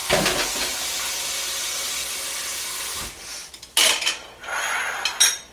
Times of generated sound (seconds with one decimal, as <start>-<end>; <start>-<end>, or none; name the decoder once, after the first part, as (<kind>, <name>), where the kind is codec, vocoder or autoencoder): none